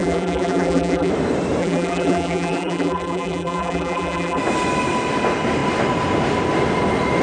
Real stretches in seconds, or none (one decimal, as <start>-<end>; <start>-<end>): 1.1-1.6; 4.4-7.2